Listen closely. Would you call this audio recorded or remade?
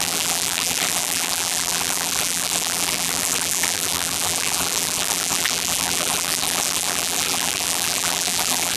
remade